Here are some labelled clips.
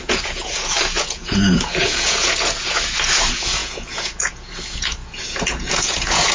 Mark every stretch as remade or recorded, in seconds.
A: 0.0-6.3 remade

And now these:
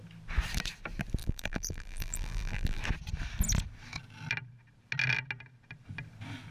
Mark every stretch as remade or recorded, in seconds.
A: 0.0-1.2 recorded; 1.2-2.8 remade; 2.8-6.5 recorded

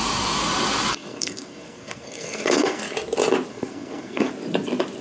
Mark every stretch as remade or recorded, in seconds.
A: 0.0-0.9 recorded; 0.9-2.8 remade; 2.8-3.5 recorded; 3.5-4.3 remade; 4.3-5.0 recorded

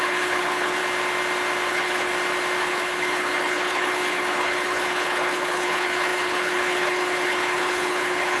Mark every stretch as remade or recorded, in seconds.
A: 0.0-0.8 remade; 0.8-1.7 recorded; 1.7-2.1 remade; 2.1-2.6 recorded; 2.6-8.4 remade

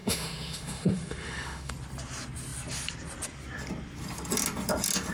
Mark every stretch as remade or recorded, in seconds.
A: 0.0-1.7 remade; 1.7-5.1 recorded

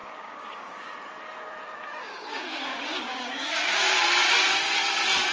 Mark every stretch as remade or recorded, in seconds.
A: 0.0-0.9 remade; 0.9-2.0 recorded; 2.0-4.0 remade; 4.0-5.3 recorded

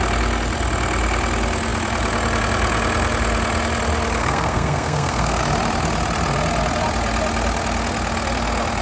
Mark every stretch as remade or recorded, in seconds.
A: 0.0-4.2 recorded; 4.2-5.4 remade; 5.4-8.8 recorded

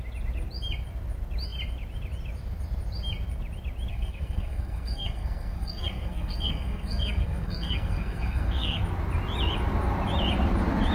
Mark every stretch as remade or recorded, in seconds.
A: 0.0-3.9 recorded; 3.9-8.8 remade; 8.8-10.9 recorded